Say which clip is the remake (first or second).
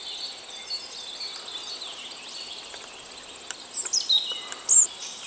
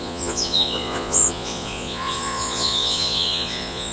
second